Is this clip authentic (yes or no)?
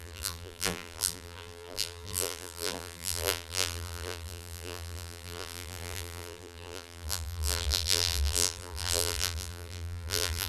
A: no